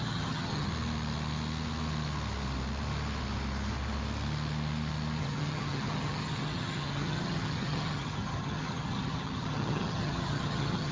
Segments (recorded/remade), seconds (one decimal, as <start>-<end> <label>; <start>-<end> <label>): 0.0-0.7 remade; 0.7-5.2 recorded; 5.2-10.9 remade